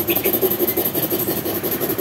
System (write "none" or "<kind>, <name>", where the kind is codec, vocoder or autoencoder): none